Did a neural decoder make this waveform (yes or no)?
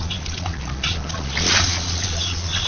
yes